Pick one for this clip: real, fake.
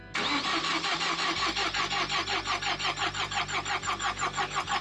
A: real